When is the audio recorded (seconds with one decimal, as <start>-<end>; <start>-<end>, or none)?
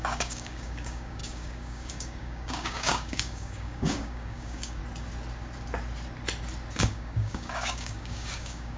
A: 4.8-6.8